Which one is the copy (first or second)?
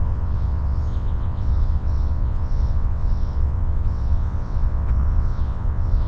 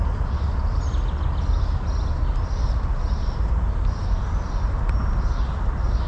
first